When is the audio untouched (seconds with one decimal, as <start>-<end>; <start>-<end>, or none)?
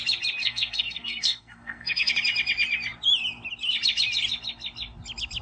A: 0.0-0.4; 2.1-5.4